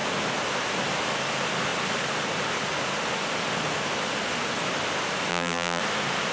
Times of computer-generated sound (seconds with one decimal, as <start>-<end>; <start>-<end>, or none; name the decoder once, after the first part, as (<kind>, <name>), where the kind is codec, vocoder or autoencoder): 5.3-5.8 (vocoder, BigVGAN v2)